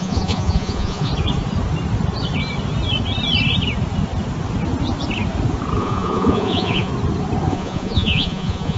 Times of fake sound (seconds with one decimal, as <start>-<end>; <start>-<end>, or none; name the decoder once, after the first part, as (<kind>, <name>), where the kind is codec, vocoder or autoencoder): 0.0-1.1 (vocoder, Vocos); 5.8-6.9; 7.5-8.8